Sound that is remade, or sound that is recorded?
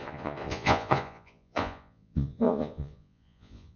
remade